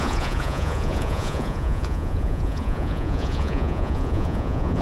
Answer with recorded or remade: remade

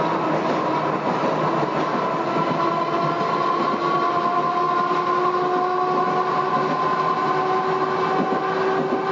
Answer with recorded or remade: recorded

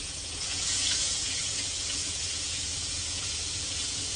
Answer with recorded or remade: remade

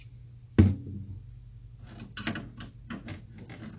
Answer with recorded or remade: recorded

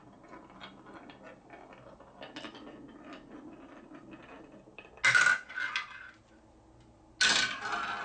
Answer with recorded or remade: recorded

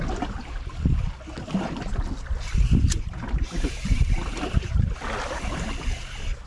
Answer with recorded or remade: recorded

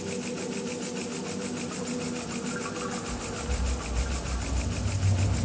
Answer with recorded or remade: recorded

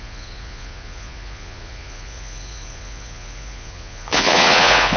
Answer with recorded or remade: remade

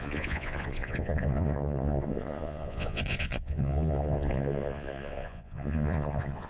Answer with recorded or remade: remade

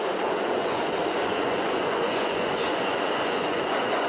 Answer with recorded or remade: remade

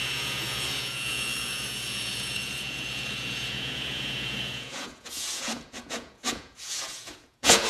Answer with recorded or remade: remade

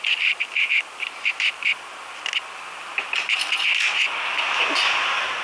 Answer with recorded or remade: recorded